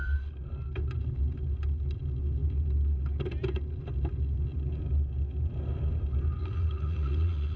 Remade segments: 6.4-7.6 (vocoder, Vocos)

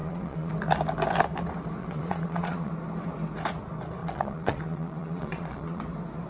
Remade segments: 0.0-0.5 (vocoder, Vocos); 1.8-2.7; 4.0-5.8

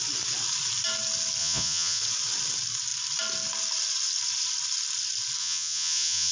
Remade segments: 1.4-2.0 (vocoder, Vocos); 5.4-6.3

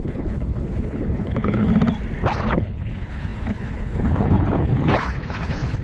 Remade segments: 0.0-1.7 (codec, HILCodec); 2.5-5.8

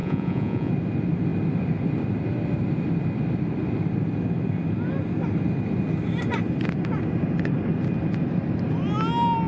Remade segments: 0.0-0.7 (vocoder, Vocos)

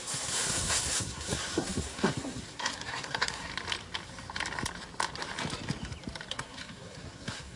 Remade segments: 0.0-3.5 (codec, SNAC); 6.3-7.6